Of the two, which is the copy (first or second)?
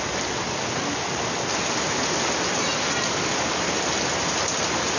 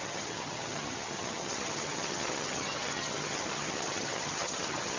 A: second